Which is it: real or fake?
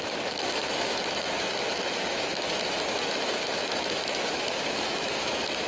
fake